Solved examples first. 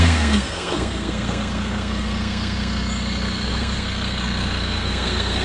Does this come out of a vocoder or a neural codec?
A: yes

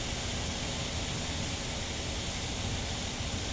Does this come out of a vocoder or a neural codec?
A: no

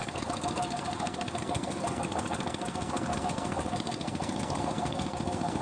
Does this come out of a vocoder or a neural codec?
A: yes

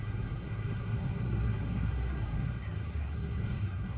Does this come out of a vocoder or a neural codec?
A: yes